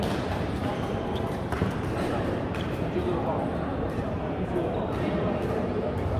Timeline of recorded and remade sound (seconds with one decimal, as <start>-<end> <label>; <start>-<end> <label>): 0.0-0.6 recorded; 0.6-3.0 remade; 3.0-3.7 recorded; 3.7-4.8 remade; 4.8-6.2 recorded